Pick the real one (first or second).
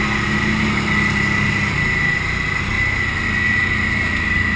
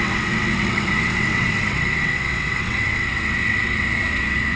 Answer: first